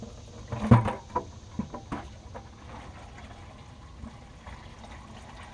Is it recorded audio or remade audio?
recorded